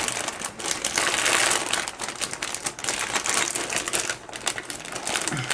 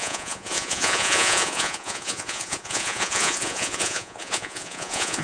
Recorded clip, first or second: first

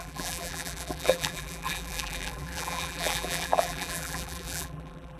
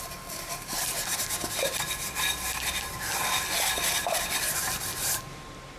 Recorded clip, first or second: second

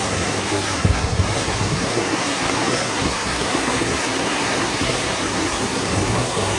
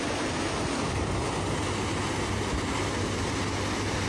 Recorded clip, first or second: second